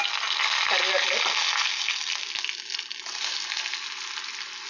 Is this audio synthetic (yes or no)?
no